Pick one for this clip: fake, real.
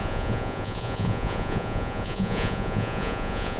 fake